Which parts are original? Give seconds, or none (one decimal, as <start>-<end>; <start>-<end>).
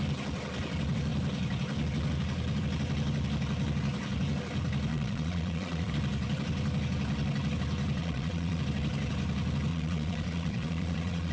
0.0-4.9; 5.9-8.0; 8.6-9.7